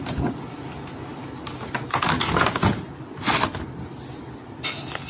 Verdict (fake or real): real